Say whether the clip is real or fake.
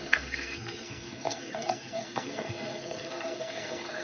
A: fake